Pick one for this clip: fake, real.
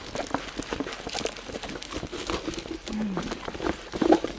real